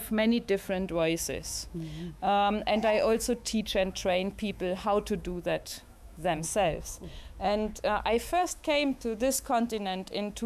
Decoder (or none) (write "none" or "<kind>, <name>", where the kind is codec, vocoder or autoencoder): autoencoder, DAC-VAE